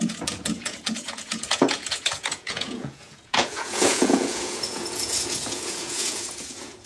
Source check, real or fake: fake